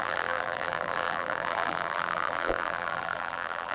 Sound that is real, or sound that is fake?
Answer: fake